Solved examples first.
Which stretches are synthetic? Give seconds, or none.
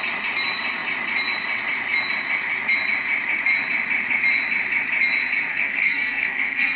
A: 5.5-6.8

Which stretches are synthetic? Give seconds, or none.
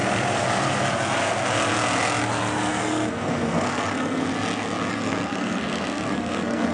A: 2.7-4.3; 4.9-6.7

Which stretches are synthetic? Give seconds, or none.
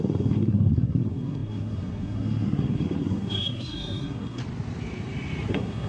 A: 0.0-4.4; 5.5-5.9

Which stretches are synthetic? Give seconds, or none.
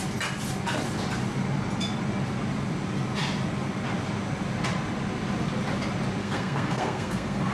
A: 6.2-7.5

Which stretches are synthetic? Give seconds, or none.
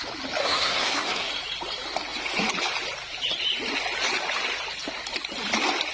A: 0.4-1.3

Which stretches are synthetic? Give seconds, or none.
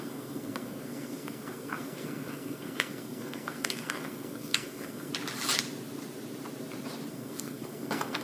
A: 0.0-5.1; 7.1-8.2